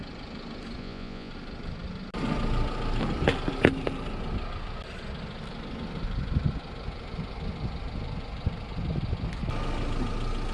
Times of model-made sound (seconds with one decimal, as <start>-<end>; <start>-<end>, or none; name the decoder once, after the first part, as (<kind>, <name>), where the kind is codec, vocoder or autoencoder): 0.8-1.3 (vocoder, Vocos)